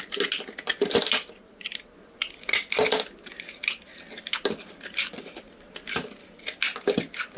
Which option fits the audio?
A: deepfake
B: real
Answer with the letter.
B